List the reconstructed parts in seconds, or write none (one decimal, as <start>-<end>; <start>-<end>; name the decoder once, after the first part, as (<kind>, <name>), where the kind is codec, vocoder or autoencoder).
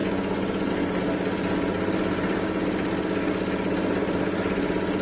0.0-0.7 (vocoder, Vocos)